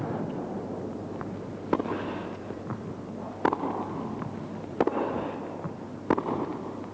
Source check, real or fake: real